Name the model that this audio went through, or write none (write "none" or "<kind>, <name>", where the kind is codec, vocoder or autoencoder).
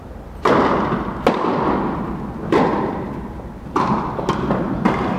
none